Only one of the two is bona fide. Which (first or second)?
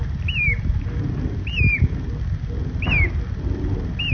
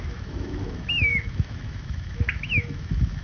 first